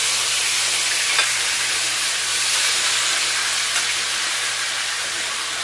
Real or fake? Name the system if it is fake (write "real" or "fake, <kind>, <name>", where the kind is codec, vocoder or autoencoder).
real